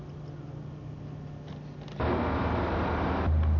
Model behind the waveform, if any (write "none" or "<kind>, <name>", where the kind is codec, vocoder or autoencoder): none